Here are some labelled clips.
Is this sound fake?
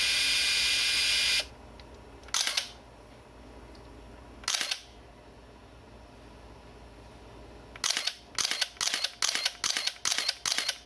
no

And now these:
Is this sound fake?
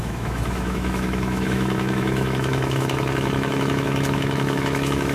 yes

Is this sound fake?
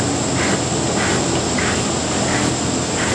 no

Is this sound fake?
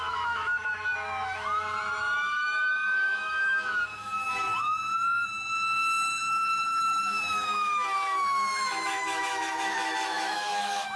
yes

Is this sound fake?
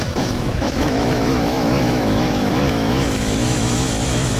yes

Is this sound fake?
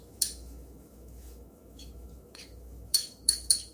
yes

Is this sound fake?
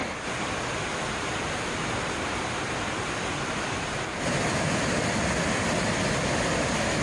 no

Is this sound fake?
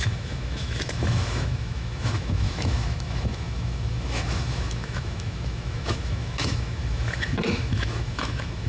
yes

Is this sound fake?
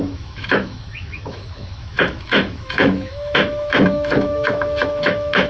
yes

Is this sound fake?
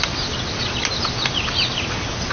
no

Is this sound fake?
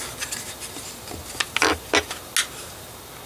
no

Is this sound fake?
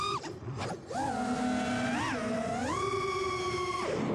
no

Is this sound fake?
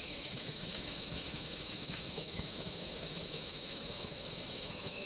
yes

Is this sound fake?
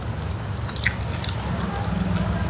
no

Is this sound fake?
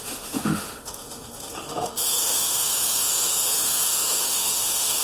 yes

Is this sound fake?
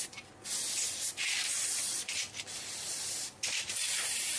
no